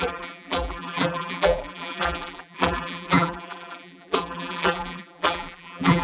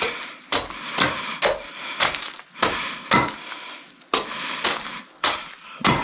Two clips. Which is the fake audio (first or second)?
first